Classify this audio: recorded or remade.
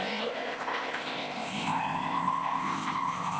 remade